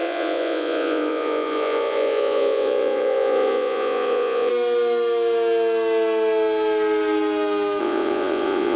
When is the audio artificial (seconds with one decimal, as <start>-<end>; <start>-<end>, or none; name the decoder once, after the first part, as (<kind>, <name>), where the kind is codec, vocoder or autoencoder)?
0.0-4.5 (vocoder, Vocos); 7.8-8.8